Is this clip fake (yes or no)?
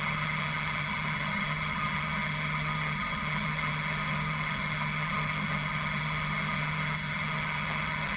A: yes